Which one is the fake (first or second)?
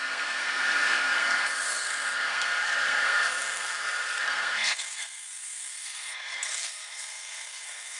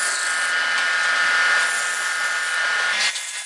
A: first